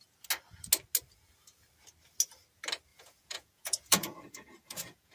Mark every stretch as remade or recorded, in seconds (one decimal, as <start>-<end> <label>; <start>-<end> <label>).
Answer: 0.0-2.9 recorded; 2.9-5.1 remade